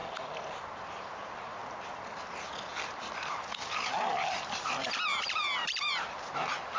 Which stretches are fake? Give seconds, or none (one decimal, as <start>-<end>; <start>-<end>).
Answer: 0.8-1.6; 4.4-6.8